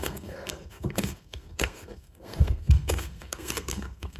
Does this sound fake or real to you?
fake